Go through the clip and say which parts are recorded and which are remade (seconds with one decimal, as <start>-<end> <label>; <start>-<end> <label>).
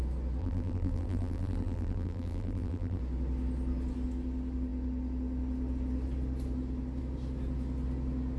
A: 0.0-0.4 recorded; 0.4-3.0 remade; 3.0-8.4 recorded